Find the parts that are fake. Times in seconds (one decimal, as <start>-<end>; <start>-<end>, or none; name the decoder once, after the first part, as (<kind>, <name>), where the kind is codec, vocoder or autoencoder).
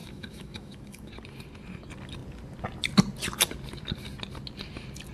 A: 0.0-1.1 (autoencoder, DAC-VAE)